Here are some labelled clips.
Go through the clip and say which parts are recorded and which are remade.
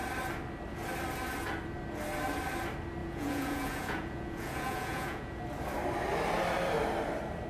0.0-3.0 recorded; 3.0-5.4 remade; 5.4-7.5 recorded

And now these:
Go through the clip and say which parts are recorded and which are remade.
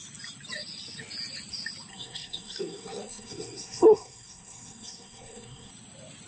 0.0-1.9 recorded; 1.9-5.7 remade; 5.7-6.3 recorded